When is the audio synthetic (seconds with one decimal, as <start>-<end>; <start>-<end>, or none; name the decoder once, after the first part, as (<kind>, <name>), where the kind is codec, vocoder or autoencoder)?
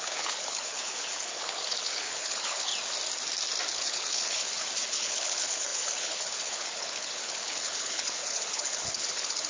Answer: 0.0-2.7 (codec, HILCodec); 3.7-9.5